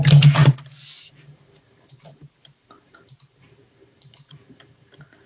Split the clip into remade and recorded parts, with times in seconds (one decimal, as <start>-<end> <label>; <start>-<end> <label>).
0.0-0.4 remade; 0.4-1.0 recorded; 1.0-5.3 remade